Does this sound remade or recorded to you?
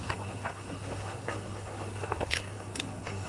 remade